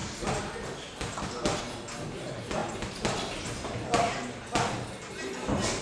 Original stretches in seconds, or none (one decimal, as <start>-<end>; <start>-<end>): 0.0-5.8